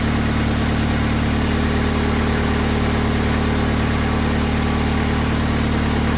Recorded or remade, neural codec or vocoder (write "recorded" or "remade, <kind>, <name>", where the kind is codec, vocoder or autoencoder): recorded